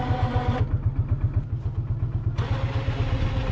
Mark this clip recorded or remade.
recorded